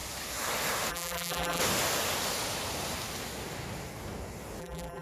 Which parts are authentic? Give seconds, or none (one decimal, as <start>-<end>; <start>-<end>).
0.0-0.9; 1.6-4.6